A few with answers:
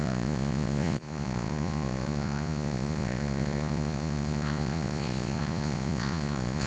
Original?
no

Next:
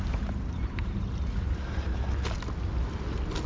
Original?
yes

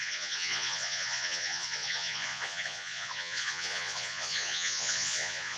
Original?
no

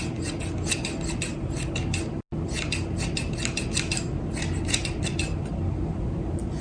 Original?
yes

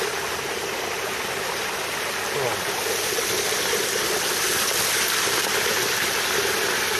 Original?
yes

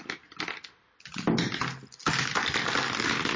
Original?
yes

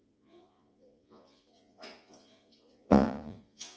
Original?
no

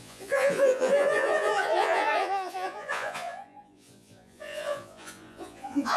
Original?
no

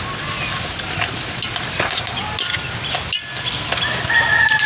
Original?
yes